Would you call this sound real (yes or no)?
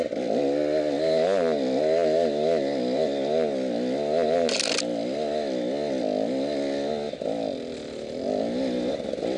yes